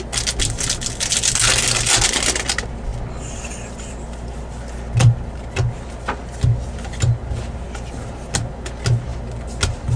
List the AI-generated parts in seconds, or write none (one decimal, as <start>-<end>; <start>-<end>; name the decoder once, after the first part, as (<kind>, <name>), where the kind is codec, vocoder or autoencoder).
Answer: none